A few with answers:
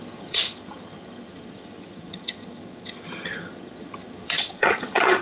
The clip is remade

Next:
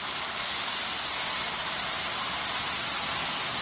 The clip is recorded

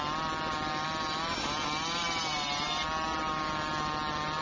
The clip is recorded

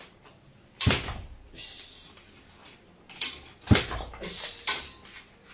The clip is recorded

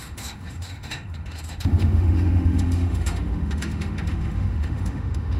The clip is remade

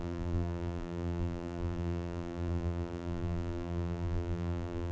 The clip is remade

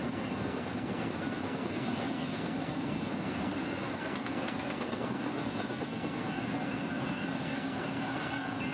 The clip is remade